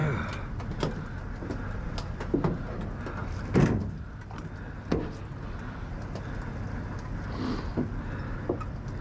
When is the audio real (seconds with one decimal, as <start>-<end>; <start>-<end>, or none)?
0.6-3.2; 4.2-9.0